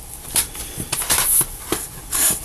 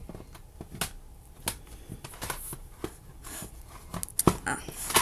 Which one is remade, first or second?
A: first